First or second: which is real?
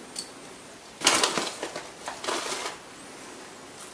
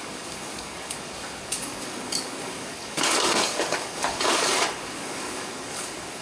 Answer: first